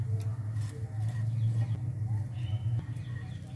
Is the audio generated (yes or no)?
no